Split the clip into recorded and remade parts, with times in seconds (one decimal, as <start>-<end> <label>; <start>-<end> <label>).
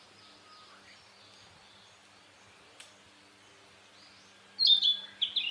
0.0-5.5 recorded